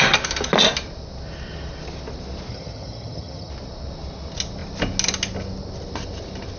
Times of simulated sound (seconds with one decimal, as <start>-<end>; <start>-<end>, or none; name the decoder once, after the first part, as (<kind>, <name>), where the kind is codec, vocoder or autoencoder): 2.5-3.5 (vocoder, HiFi-GAN)

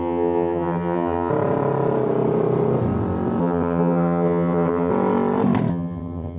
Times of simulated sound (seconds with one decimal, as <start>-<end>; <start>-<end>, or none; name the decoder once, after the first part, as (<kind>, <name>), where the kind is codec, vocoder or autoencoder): 0.0-1.3 (vocoder, HiFi-GAN); 3.4-4.9; 5.7-6.4